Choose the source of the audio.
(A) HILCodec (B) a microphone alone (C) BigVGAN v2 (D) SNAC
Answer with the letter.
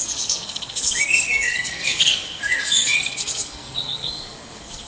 D